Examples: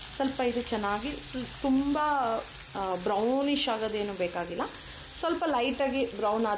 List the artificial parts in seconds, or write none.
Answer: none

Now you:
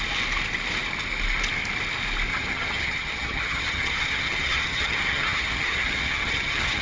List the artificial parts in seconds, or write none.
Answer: 2.3-6.8 (vocoder, HiFi-GAN)

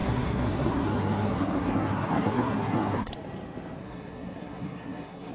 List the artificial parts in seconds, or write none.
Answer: 0.0-3.1 (codec, SNAC); 3.8-5.3

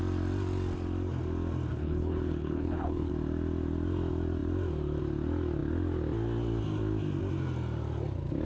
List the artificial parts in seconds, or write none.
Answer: 1.7-3.1 (codec, HILCodec)